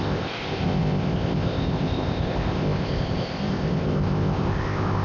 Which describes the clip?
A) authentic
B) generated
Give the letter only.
B